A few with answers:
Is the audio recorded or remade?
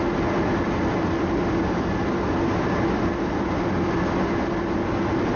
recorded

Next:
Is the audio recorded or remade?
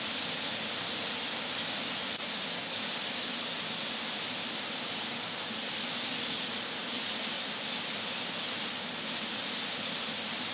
recorded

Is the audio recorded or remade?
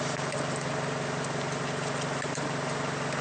recorded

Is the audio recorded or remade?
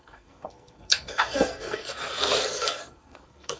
remade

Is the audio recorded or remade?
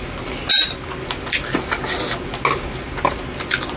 recorded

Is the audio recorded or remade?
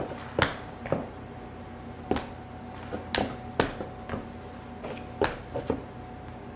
recorded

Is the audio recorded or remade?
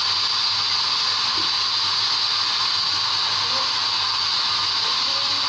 recorded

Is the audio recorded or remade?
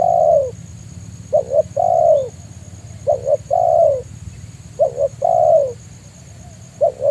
recorded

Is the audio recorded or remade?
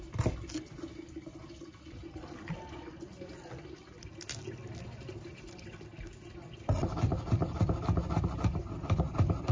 recorded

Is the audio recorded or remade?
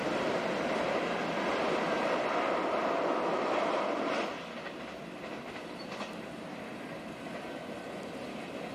recorded